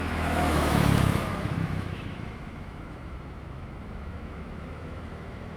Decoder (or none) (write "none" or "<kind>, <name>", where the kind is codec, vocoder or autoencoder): autoencoder, DAC-VAE